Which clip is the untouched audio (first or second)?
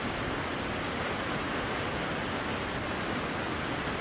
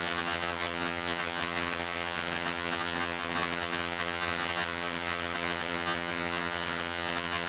first